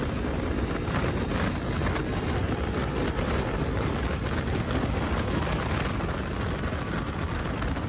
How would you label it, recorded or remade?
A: recorded